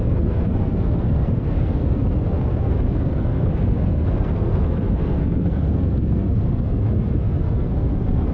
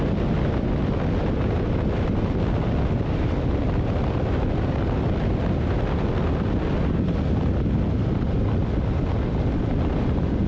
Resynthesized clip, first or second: first